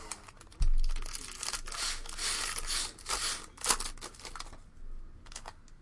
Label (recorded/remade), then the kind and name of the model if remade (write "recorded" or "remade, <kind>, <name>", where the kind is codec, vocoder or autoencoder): recorded